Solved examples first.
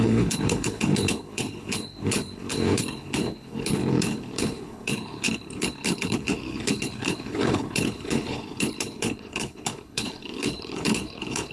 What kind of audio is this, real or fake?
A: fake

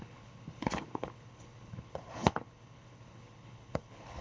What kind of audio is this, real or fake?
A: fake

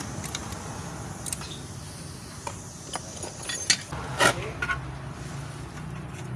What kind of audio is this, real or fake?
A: real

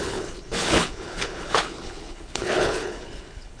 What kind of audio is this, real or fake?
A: fake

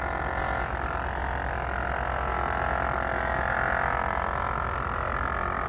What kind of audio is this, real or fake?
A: real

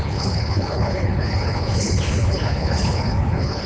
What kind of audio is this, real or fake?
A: fake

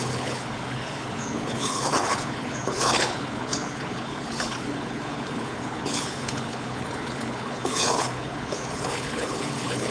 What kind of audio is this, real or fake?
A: fake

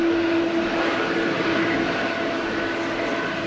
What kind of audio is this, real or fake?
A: real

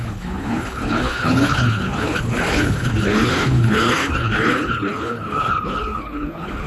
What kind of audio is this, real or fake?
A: fake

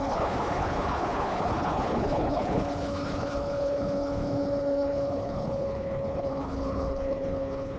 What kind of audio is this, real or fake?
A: fake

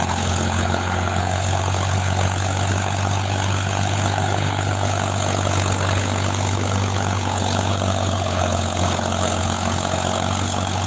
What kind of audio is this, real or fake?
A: fake